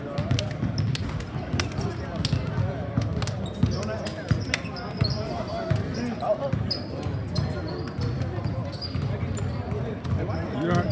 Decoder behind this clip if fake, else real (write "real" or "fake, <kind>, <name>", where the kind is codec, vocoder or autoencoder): real